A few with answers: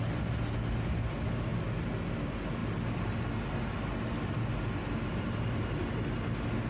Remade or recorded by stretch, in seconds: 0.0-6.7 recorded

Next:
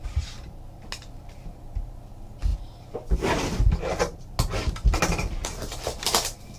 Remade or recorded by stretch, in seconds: 0.0-6.6 recorded

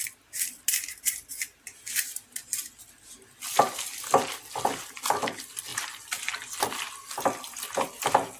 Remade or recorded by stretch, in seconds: 0.0-8.4 recorded

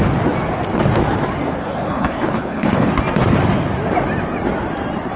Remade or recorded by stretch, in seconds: 0.0-1.6 recorded; 1.6-2.9 remade; 2.9-5.2 recorded